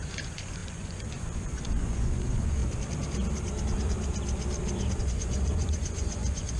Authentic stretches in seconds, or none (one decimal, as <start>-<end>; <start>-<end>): 2.6-5.0